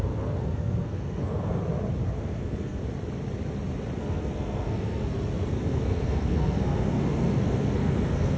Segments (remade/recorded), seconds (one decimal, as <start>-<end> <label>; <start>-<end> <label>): 0.0-1.6 remade; 1.6-2.2 recorded; 2.2-2.8 remade; 2.8-4.0 recorded; 4.0-8.4 remade